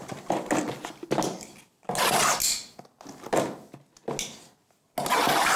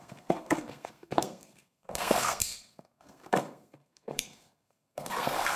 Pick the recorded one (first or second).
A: first